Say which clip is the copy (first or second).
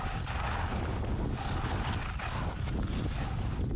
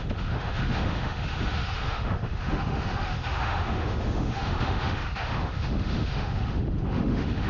second